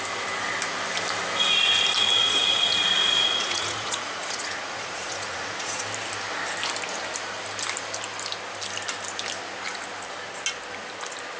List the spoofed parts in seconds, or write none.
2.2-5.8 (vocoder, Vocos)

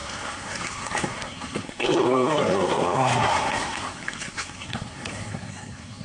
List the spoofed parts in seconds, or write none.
0.0-6.0 (codec, SNAC)

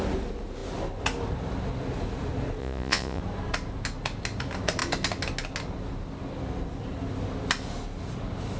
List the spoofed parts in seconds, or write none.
2.6-3.2 (vocoder, Vocos)

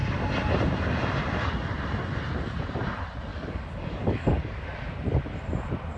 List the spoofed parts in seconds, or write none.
3.3-4.7 (codec, DAC)